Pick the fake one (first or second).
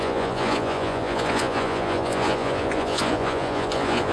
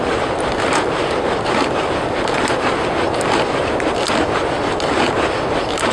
first